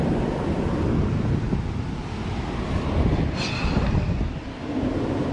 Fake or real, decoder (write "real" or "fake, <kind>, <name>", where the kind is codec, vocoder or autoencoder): real